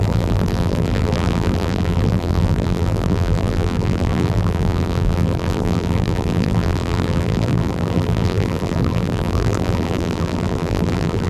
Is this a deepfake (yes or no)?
yes